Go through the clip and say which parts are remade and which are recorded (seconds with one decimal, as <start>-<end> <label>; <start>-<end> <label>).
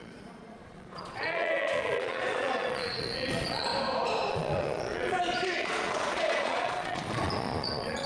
0.0-3.7 remade; 3.7-4.3 recorded; 4.3-8.1 remade